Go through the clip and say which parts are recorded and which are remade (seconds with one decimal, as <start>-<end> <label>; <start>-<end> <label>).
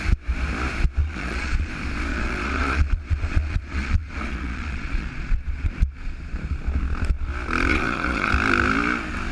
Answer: 0.0-1.0 recorded; 1.0-1.7 remade; 1.7-2.1 recorded; 2.1-5.7 remade; 5.7-7.7 recorded; 7.7-8.3 remade; 8.3-9.3 recorded